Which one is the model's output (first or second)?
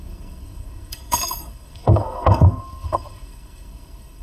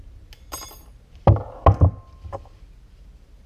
first